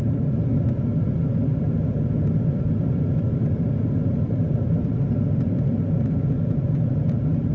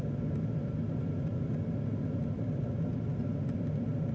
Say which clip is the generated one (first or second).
first